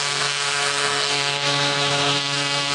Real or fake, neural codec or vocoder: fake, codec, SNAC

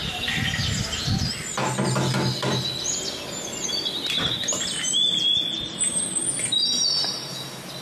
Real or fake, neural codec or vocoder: real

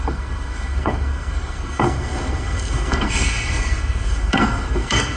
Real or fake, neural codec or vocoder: fake, codec, SNAC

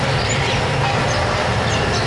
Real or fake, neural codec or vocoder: real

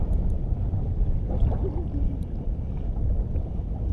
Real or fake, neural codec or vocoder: real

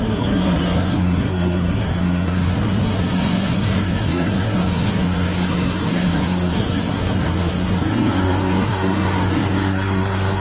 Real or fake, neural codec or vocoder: fake, codec, SNAC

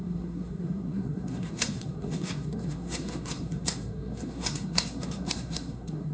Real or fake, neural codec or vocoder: fake, codec, SNAC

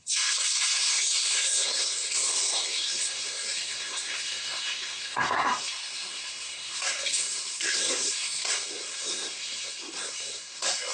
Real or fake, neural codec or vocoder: fake, codec, SNAC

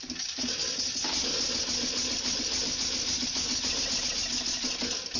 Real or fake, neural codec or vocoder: real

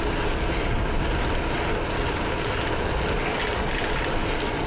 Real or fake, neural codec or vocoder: real